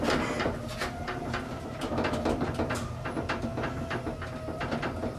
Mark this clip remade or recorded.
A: recorded